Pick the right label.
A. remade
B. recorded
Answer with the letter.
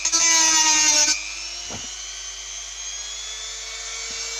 B